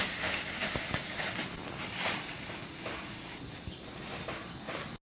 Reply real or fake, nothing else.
real